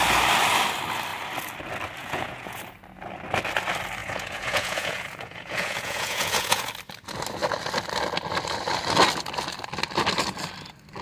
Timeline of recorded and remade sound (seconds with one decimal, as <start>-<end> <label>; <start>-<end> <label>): 0.0-2.0 recorded; 2.0-2.6 remade; 2.6-4.0 recorded; 4.0-6.7 remade; 6.7-11.0 recorded